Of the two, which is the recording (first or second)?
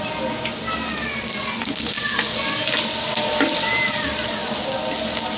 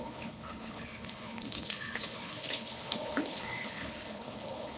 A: first